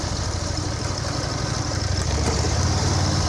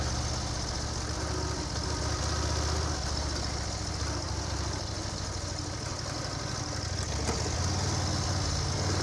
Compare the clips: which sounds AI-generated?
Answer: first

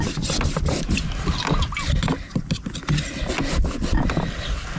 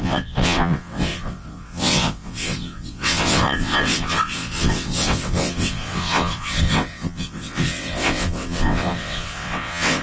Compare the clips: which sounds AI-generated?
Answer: second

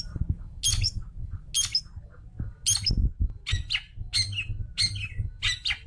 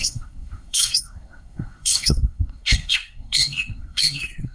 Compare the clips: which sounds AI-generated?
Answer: second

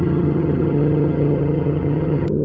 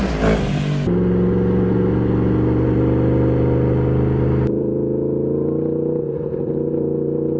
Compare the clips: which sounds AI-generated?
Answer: first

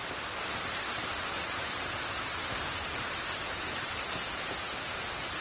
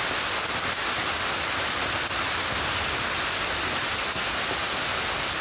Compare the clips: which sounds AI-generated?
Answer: first